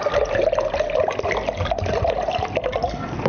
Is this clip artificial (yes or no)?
no